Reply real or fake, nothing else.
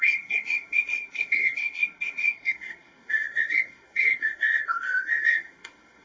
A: fake